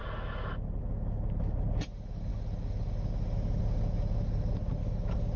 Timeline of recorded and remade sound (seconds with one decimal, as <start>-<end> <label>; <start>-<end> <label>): 0.0-4.8 recorded; 4.8-5.4 remade